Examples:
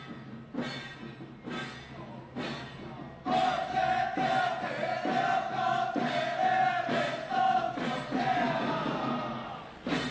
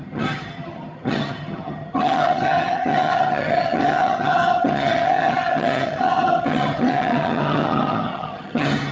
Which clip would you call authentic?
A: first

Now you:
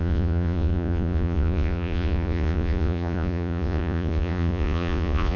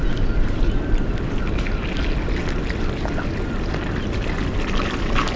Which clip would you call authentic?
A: second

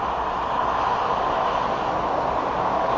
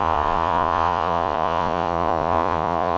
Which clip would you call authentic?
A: first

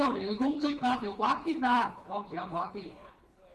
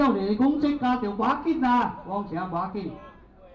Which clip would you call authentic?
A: second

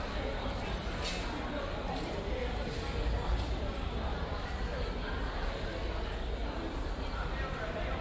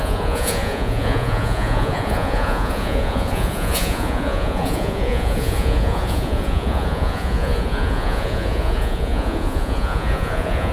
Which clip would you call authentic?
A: first